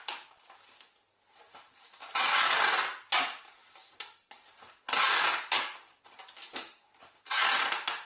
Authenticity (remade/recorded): recorded